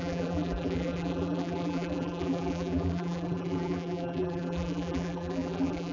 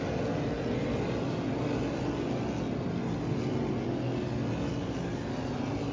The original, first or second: second